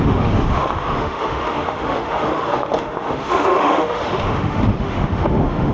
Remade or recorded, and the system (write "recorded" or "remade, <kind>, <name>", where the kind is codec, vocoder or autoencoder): remade, autoencoder, DAC-VAE